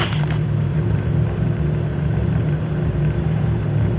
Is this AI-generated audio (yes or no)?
yes